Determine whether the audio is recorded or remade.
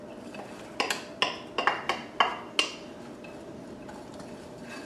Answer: recorded